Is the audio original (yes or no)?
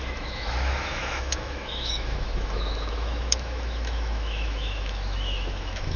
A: no